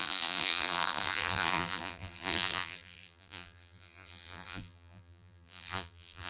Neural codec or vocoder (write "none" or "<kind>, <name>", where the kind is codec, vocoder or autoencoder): vocoder, BigVGAN v2